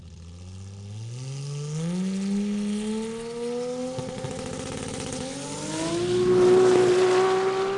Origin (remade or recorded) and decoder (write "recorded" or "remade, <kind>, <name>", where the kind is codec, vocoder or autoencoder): recorded